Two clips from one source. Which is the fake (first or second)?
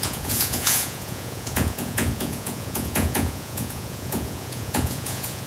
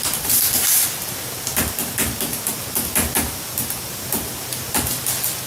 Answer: first